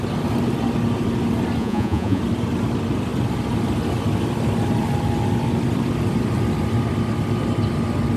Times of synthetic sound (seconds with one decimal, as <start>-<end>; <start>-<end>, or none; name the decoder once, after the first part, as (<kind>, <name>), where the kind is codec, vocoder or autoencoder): 1.6-2.2 (vocoder, Vocos)